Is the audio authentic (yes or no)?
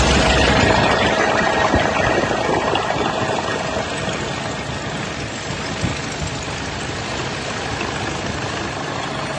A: yes